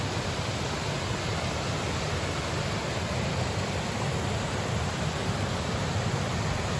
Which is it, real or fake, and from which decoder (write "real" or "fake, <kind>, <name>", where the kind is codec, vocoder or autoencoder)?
real